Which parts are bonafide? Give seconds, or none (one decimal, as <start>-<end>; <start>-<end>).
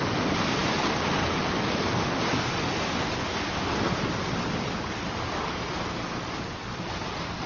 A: 0.0-7.5